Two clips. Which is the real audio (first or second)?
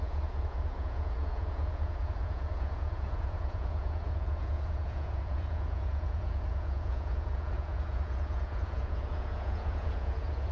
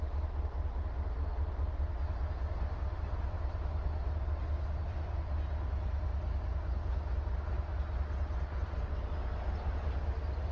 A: second